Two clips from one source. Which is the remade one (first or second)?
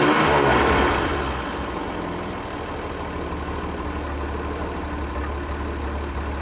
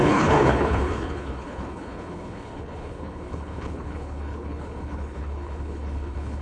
second